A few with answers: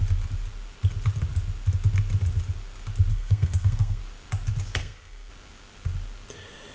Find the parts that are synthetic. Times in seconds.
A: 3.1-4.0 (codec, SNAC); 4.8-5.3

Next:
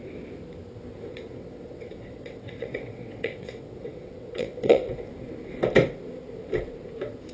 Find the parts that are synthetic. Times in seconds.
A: 1.1-5.1 (vocoder, WaveNeXt)

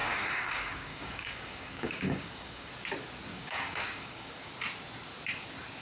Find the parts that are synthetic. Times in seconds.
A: 0.0-2.7 (codec, DAC); 3.3-4.5

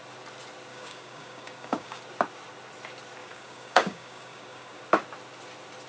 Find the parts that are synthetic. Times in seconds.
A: 0.7-2.0 (codec, DAC); 3.2-4.8